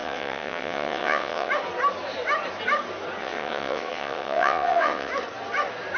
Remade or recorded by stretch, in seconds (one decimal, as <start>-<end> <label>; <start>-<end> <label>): 0.0-1.5 remade; 1.5-3.2 recorded; 3.2-5.1 remade; 5.1-6.0 recorded